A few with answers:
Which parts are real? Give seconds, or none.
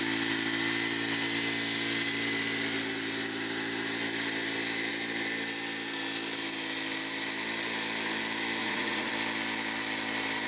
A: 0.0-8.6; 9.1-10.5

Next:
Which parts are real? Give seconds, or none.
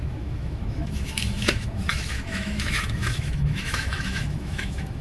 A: none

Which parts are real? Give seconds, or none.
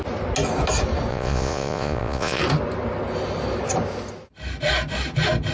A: 0.0-1.1; 2.4-5.5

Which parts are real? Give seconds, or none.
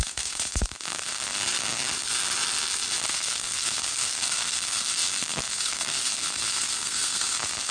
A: 1.4-3.0